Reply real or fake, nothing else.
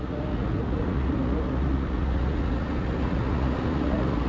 fake